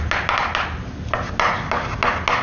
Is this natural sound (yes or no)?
yes